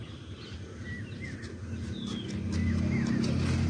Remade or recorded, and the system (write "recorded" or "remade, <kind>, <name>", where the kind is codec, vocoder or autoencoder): recorded